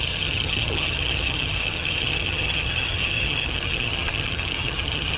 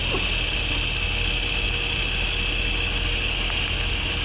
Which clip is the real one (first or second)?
second